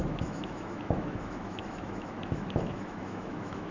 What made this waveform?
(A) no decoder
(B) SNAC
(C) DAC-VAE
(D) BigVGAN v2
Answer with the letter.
C